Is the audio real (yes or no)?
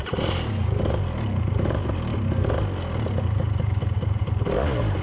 yes